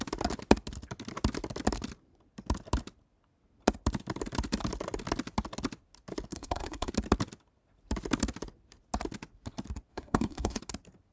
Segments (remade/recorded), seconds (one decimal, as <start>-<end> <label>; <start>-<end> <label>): 0.0-6.3 recorded; 6.3-6.9 remade; 6.9-9.9 recorded; 9.9-10.6 remade; 10.6-11.1 recorded